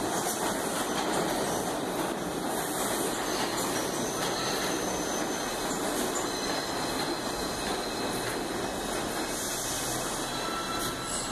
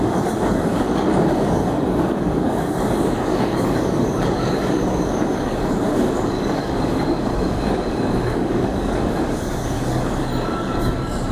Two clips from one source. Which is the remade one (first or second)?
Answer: second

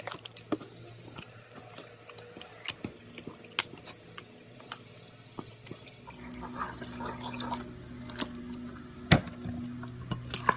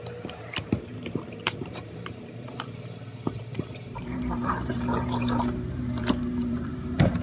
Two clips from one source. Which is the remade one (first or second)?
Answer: second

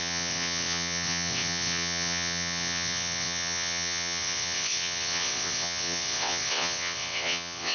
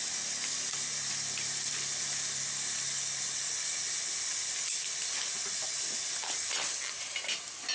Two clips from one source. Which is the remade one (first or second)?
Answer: first